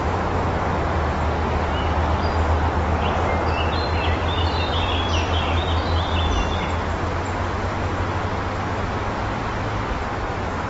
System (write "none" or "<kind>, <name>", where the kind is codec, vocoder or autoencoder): none